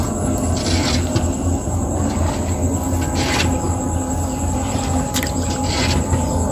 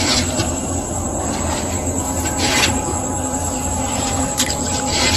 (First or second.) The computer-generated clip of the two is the second